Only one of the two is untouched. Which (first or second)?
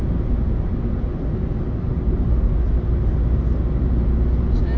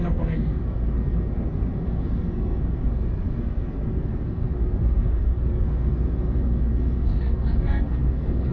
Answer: first